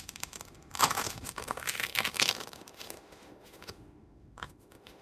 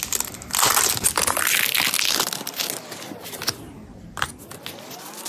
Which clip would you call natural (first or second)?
second